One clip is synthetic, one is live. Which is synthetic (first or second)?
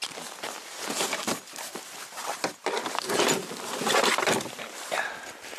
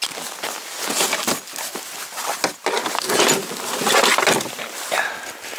first